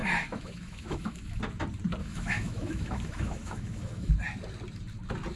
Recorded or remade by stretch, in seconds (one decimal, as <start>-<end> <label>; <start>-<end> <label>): 0.0-1.4 remade; 1.4-2.0 recorded; 2.0-4.1 remade; 4.1-5.4 recorded